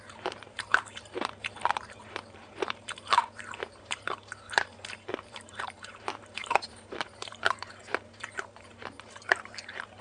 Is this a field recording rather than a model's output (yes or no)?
no